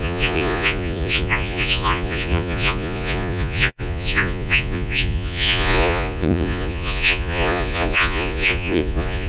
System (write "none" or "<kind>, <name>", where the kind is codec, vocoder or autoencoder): vocoder, Vocos